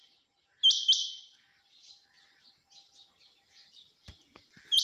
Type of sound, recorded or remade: recorded